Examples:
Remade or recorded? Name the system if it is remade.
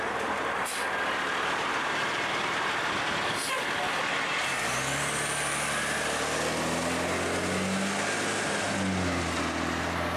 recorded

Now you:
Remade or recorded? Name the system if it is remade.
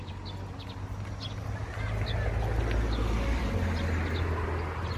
recorded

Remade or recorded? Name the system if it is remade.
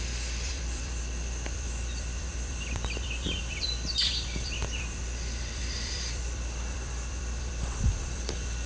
remade, vocoder, BigVGAN v2